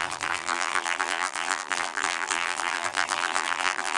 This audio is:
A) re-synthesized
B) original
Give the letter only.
A